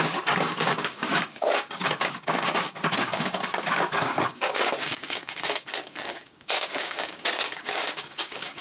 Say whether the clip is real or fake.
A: fake